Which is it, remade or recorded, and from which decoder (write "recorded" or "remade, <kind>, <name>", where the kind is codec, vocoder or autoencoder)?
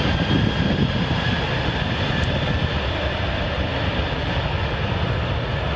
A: recorded